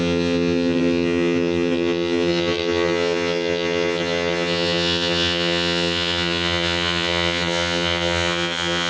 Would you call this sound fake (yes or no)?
yes